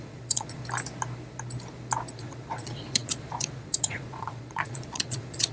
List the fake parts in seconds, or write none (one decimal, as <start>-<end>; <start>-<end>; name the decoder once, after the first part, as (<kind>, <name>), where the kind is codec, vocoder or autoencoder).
0.0-0.6 (vocoder, Vocos); 2.1-5.5